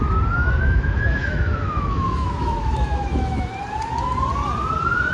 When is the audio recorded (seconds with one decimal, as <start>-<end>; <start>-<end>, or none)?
0.0-0.4; 3.5-5.1